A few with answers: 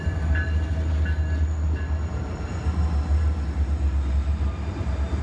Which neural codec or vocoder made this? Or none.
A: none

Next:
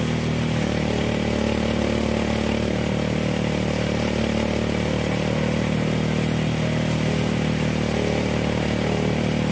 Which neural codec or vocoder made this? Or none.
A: none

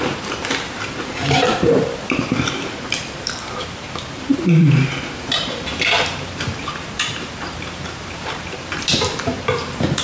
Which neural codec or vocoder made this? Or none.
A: vocoder, BigVGAN v2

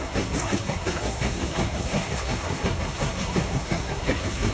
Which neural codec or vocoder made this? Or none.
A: codec, SNAC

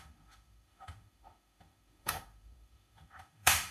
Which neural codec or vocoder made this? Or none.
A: autoencoder, DAC-VAE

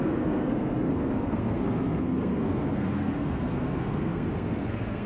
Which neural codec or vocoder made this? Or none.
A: codec, SNAC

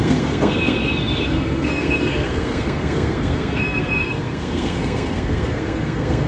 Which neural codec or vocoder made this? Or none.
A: codec, SNAC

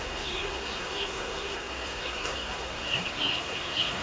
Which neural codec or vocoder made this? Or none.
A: codec, SNAC